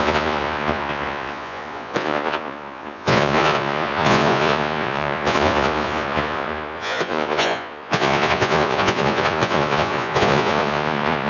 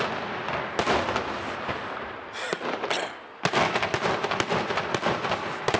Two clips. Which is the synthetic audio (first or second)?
first